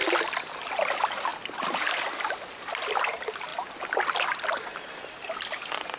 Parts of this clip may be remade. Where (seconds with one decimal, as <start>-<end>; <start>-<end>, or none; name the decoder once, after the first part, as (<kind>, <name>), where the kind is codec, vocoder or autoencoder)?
none